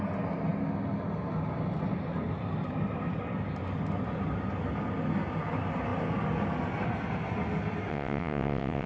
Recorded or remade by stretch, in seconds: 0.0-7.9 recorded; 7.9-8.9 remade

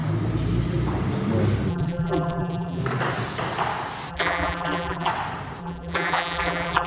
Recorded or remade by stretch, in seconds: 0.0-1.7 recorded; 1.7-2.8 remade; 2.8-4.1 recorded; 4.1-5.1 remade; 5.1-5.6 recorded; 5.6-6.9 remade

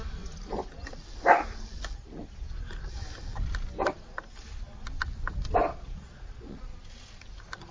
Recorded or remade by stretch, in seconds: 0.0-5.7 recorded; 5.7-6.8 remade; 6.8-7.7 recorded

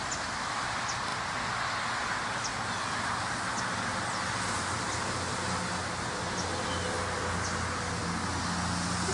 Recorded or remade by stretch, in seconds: 0.0-9.1 recorded